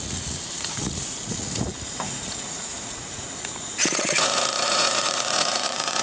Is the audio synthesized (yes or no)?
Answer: yes